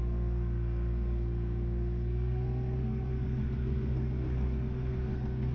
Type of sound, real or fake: fake